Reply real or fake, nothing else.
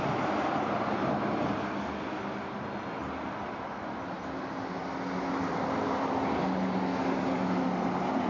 real